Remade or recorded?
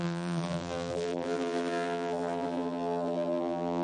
remade